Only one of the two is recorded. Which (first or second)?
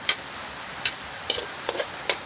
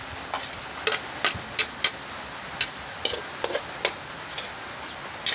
second